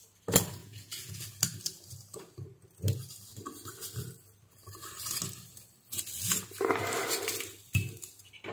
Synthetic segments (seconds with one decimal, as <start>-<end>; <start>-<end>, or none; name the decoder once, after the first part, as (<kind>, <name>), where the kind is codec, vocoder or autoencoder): 0.6-1.2 (vocoder, Vocos)